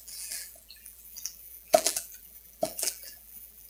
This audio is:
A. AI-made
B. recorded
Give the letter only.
A